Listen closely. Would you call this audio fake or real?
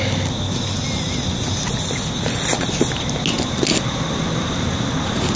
real